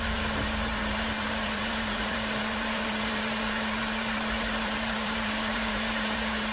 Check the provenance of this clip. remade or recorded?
remade